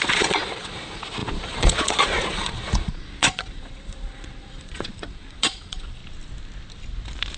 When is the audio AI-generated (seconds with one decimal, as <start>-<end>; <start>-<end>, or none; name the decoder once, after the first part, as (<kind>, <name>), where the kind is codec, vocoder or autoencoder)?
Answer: 0.0-6.0 (vocoder, Vocos)